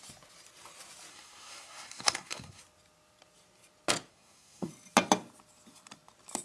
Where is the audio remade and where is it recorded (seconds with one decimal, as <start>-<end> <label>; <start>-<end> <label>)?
0.0-1.1 recorded; 1.1-2.6 remade; 2.6-4.1 recorded; 4.1-4.7 remade; 4.7-6.4 recorded